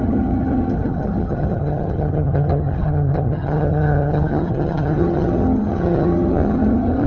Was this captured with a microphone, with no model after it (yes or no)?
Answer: no